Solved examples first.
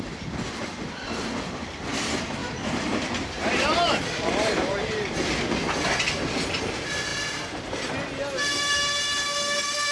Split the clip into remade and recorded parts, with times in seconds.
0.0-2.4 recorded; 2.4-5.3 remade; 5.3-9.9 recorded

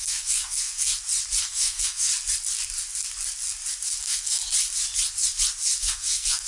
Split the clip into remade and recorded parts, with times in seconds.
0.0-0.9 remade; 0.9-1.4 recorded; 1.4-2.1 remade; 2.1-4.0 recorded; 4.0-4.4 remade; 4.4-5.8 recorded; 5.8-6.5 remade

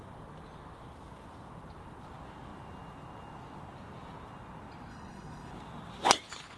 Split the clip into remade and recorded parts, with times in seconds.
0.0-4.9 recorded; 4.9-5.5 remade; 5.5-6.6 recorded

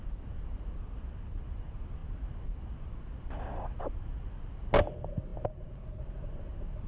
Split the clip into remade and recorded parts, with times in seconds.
0.0-6.9 recorded